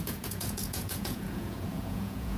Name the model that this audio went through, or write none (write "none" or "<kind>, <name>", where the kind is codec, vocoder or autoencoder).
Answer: vocoder, Vocos